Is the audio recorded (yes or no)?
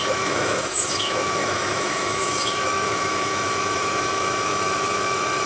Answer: no